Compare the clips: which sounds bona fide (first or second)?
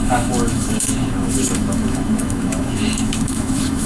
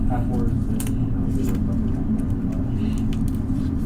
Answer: second